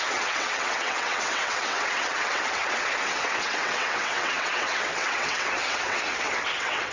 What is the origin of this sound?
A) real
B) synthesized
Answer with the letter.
B